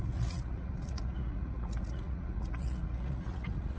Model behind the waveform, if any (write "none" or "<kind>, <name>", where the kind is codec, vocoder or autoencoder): vocoder, Vocos